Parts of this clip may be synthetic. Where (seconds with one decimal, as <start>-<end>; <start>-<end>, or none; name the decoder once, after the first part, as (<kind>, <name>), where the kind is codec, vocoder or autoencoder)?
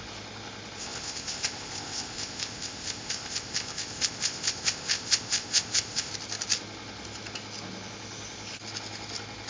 0.8-6.1 (codec, ZipCodec)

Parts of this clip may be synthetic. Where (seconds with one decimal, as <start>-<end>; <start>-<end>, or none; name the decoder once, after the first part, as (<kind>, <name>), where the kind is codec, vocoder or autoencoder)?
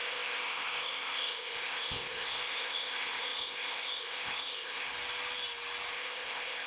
0.0-4.9 (codec, ZipCodec); 5.9-6.7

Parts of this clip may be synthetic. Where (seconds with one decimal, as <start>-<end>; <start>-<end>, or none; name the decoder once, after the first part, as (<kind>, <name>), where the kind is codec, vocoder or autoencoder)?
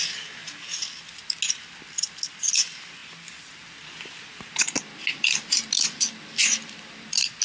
none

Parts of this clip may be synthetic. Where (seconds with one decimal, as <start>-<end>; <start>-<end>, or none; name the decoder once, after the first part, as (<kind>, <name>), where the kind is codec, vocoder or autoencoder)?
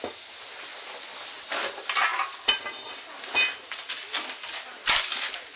none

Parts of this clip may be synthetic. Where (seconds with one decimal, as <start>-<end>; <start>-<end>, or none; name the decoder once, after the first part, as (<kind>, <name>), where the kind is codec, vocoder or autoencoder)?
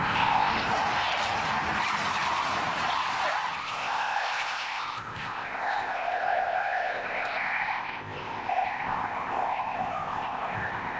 0.0-0.5 (codec, ZipCodec); 3.6-11.0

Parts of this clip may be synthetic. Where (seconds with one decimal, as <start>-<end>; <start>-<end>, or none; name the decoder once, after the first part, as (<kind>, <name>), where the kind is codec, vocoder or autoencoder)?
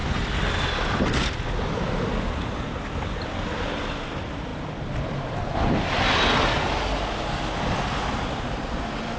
none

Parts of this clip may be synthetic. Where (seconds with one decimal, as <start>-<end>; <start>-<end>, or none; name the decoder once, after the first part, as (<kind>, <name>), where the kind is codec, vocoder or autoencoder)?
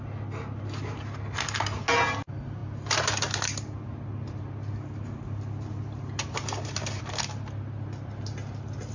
none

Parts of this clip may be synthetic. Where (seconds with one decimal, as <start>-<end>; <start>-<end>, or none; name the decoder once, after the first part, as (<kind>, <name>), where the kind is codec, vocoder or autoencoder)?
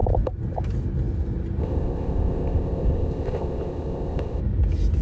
1.6-4.4 (codec, ZipCodec)